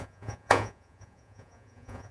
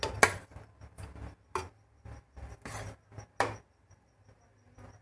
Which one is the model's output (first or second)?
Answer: first